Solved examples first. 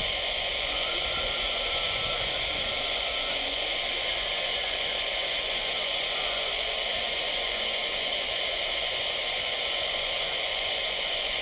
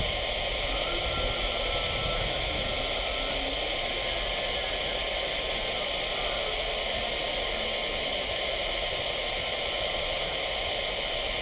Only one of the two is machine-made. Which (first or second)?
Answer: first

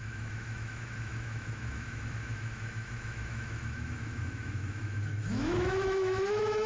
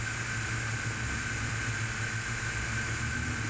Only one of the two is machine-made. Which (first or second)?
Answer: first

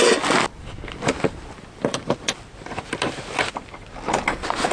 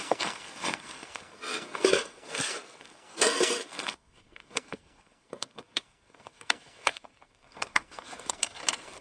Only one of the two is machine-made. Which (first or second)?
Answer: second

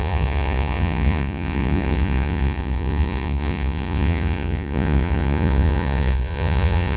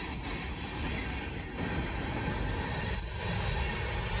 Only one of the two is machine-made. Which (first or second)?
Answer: first